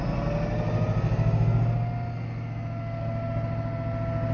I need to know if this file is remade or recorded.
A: recorded